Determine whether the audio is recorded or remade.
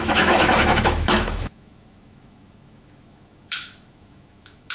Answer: remade